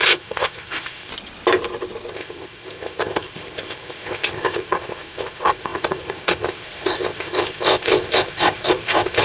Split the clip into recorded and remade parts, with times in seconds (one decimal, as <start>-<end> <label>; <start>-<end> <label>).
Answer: 0.0-1.1 remade; 1.1-2.1 recorded; 2.1-9.2 remade

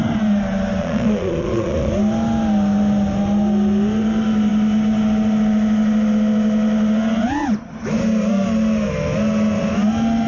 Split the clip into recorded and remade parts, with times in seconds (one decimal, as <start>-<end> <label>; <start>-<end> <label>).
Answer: 0.0-0.8 recorded; 0.8-1.9 remade; 1.9-10.3 recorded

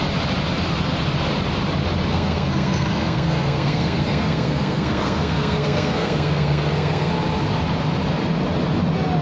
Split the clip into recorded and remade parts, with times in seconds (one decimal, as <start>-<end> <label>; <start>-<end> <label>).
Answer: 0.0-2.1 recorded; 2.1-7.1 remade; 7.1-9.2 recorded

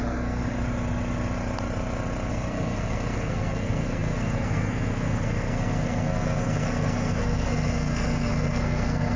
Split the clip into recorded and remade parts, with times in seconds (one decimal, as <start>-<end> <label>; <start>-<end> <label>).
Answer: 0.0-0.4 remade; 0.4-2.3 recorded; 2.3-9.2 remade

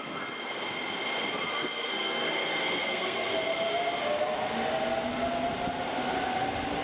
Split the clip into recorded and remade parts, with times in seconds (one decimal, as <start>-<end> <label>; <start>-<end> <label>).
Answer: 0.0-1.5 recorded; 1.5-3.3 remade; 3.3-6.8 recorded

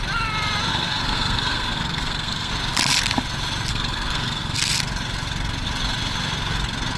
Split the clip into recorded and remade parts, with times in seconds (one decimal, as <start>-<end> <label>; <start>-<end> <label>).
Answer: 0.0-0.7 recorded; 0.7-2.5 remade; 2.5-3.7 recorded; 3.7-4.8 remade; 4.8-7.0 recorded

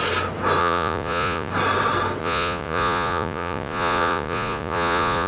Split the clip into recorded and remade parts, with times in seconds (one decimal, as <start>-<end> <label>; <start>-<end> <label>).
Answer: 0.0-0.6 recorded; 0.6-1.5 remade; 1.5-2.2 recorded; 2.2-5.3 remade